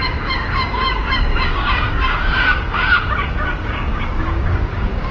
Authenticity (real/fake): fake